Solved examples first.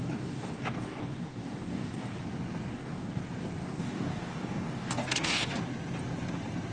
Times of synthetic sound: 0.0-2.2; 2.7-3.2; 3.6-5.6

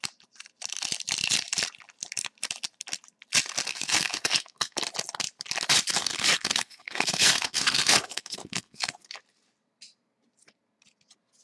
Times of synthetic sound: 3.7-4.8; 6.0-9.2

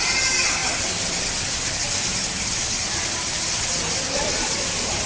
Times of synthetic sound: none

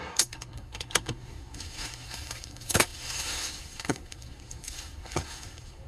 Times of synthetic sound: 0.0-5.9